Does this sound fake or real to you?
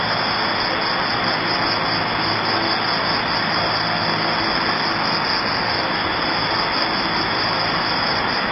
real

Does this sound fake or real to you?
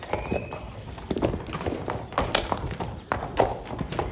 real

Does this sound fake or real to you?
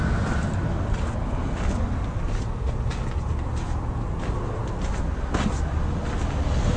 real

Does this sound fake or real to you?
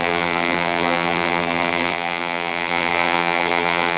fake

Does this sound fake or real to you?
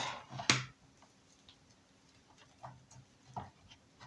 real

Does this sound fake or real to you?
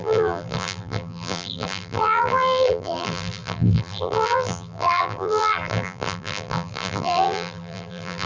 fake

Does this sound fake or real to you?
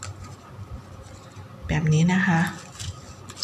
real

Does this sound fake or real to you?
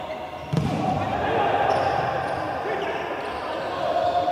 real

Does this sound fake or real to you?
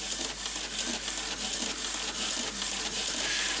real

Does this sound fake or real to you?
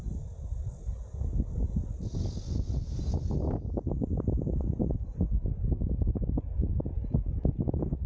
real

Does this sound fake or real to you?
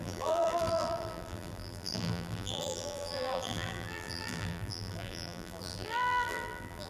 fake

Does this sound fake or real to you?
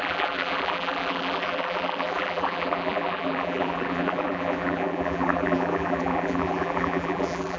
fake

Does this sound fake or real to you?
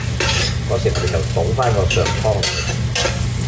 real